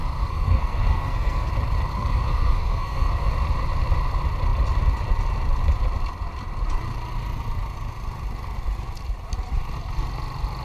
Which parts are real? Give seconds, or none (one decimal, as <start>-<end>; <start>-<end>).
1.5-1.9; 3.3-10.6